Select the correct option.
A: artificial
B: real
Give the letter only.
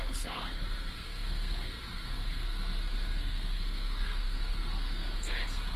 A